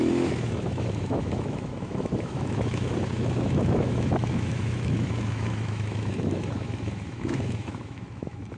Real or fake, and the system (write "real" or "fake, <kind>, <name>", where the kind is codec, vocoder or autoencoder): fake, autoencoder, DAC-VAE